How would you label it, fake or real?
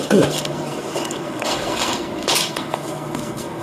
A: fake